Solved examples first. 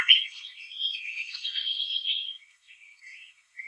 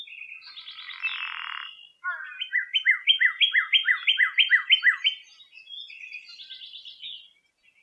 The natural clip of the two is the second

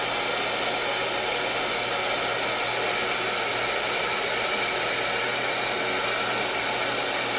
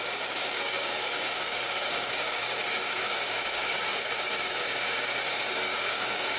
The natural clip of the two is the first